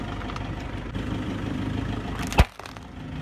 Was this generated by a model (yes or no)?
no